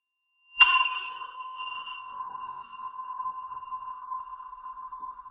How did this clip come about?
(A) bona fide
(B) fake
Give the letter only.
B